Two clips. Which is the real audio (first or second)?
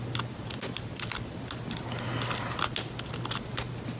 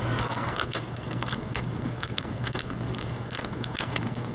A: first